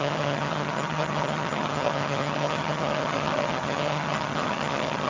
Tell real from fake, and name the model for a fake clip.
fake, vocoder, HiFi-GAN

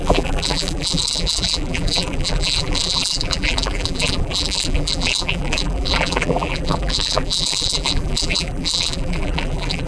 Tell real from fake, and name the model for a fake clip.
fake, vocoder, BigVGAN v2